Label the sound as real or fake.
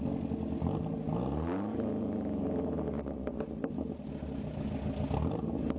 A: real